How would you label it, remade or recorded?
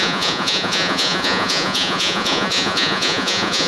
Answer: remade